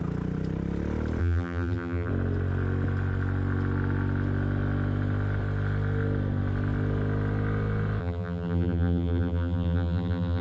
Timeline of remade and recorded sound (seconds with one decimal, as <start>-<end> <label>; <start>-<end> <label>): 0.0-1.2 recorded; 1.2-2.1 remade; 2.1-8.0 recorded; 8.0-10.4 remade